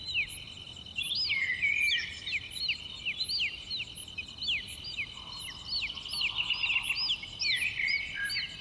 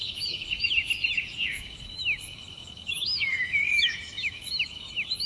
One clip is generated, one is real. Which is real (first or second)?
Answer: first